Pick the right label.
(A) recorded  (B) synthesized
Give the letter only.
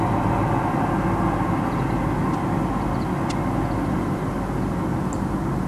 A